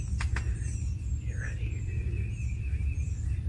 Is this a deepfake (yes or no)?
no